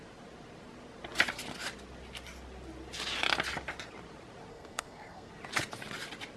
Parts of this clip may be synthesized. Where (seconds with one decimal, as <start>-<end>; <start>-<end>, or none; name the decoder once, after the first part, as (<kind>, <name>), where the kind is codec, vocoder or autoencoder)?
4.5-5.3 (codec, SNAC)